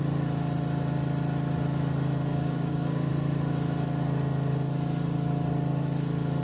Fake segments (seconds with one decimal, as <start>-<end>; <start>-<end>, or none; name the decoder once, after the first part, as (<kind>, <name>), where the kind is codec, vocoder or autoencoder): 2.3-3.1 (codec, DAC)